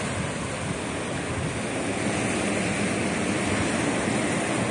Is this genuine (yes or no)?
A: yes